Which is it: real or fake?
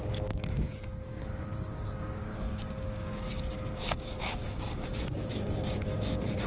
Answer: fake